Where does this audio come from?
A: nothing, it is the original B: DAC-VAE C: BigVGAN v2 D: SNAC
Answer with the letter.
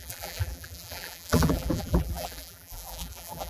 C